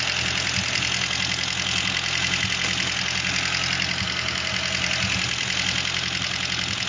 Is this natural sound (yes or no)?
yes